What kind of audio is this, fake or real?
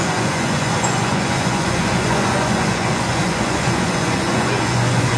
fake